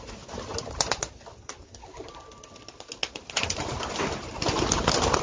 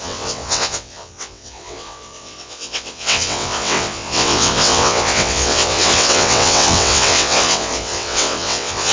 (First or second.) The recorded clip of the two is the first